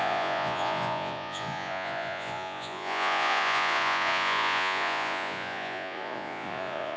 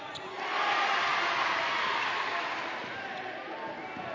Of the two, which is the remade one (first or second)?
first